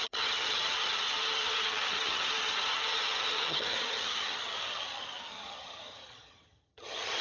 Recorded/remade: remade